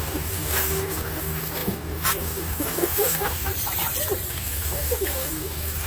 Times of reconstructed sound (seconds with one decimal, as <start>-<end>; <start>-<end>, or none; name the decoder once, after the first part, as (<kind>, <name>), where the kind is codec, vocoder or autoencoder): 0.0-3.5 (codec, DAC); 4.3-5.9